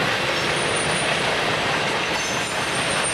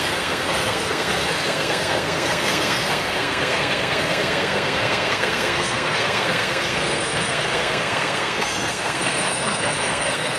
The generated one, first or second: second